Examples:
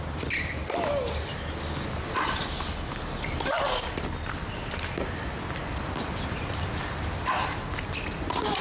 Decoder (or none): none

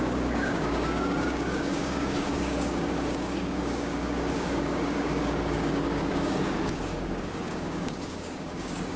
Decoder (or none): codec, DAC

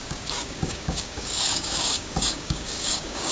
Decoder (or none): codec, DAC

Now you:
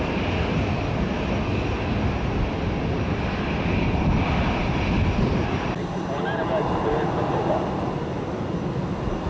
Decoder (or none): none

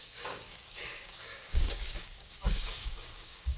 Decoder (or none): codec, DAC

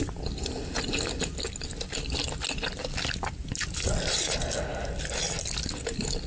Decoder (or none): none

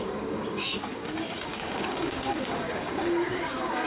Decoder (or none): codec, DAC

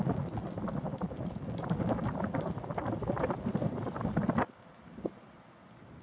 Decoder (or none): none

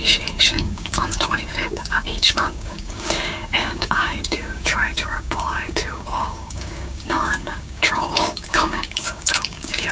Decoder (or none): codec, DAC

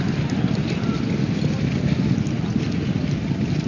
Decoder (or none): none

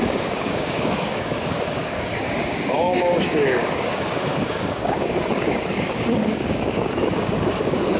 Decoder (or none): codec, DAC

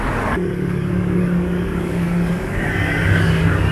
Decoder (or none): codec, DAC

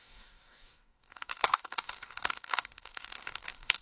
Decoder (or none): codec, DAC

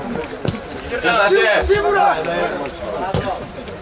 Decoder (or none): none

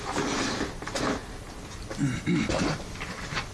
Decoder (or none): none